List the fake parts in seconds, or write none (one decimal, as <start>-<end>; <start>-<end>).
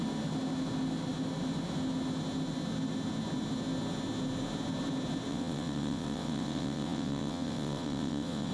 5.3-8.5